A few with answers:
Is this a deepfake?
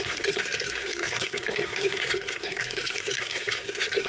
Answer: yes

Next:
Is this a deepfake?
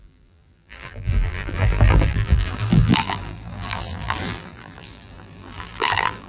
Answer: yes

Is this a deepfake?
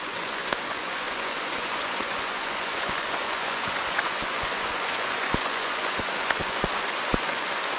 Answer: yes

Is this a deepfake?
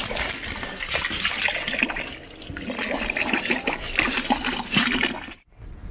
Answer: no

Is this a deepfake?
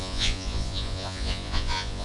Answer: yes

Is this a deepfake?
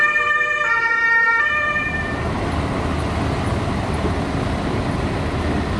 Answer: no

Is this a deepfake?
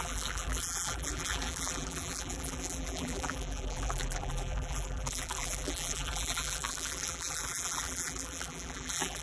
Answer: yes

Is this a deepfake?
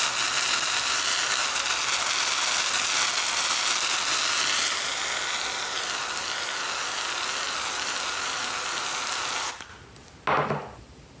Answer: no